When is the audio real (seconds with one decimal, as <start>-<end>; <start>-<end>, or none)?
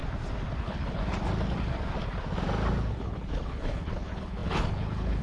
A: 0.0-0.6; 1.0-2.9